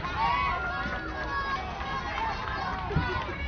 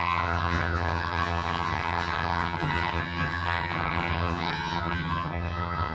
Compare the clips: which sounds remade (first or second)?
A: second